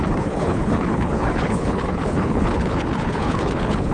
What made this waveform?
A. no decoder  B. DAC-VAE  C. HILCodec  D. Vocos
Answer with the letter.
C